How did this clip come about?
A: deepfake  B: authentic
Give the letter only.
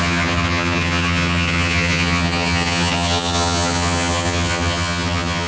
A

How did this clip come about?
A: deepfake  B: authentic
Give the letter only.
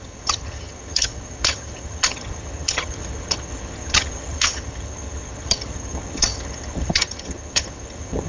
A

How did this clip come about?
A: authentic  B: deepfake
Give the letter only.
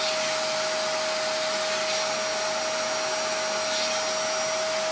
A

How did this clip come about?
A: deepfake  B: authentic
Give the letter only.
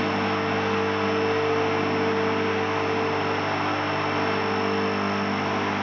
B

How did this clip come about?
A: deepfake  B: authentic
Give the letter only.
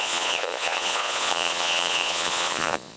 A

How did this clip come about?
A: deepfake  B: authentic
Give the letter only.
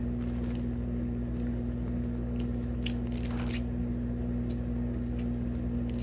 B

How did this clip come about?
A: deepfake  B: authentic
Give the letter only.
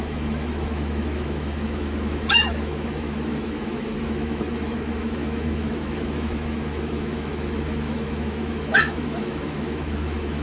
A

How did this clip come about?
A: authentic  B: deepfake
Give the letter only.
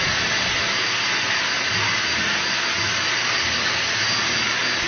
A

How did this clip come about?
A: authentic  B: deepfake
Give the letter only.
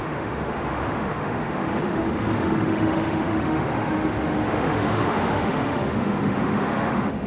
B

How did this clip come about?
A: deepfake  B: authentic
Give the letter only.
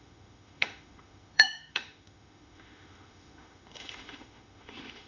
A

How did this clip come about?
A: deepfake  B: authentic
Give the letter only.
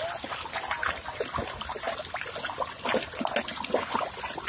B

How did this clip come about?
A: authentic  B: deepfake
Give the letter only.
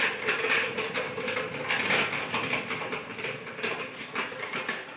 A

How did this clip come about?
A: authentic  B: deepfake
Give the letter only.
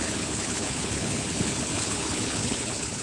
B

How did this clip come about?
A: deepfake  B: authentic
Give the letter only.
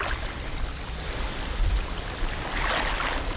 B